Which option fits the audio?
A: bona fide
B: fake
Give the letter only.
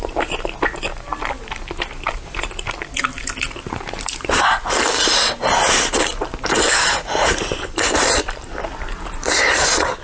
A